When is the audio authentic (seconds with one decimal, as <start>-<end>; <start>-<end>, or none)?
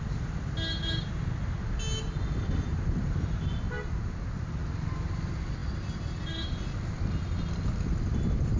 0.0-8.6